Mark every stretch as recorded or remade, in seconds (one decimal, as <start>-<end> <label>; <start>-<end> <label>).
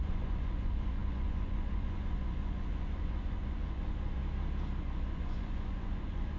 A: 0.0-4.2 remade; 4.2-4.8 recorded; 4.8-6.4 remade